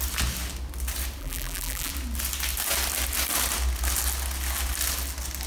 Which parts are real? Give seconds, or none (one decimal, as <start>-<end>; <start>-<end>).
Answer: 0.0-1.2; 1.9-5.5